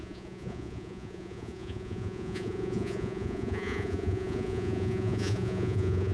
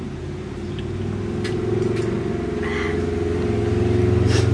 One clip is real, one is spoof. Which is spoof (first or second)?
first